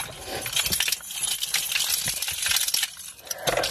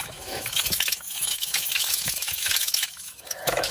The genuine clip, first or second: first